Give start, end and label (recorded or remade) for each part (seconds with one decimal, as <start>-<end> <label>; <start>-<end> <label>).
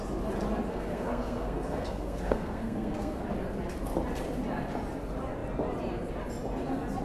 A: 0.0-0.7 recorded; 0.7-3.2 remade; 3.2-7.0 recorded